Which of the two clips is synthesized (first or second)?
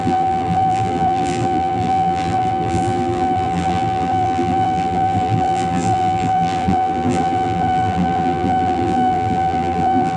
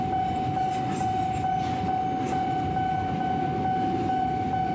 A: first